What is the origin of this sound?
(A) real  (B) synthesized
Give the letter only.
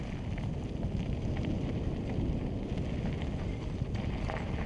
A